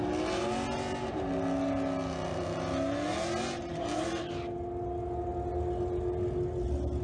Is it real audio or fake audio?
real